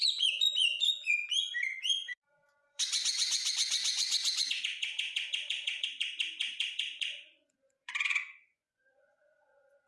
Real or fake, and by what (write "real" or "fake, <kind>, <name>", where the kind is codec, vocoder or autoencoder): fake, vocoder, Vocos